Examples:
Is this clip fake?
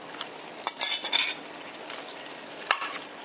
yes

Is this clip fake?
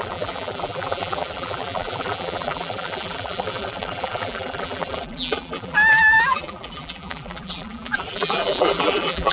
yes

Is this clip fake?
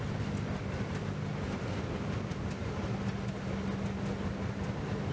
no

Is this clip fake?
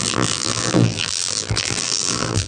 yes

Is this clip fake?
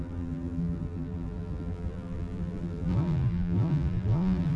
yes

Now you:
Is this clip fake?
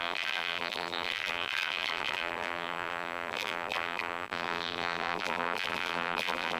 yes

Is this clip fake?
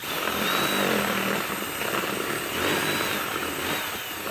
no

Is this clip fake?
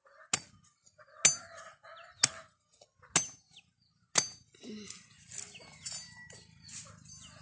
no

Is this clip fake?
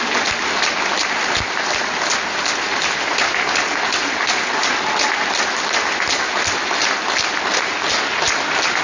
no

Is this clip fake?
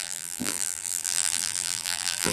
yes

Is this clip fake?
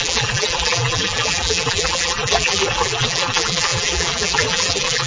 yes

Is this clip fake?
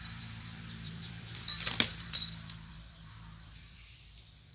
yes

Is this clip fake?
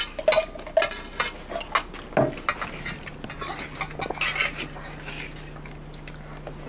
no